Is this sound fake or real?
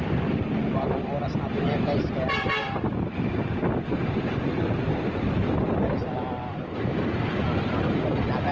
real